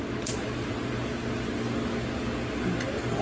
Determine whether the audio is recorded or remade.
recorded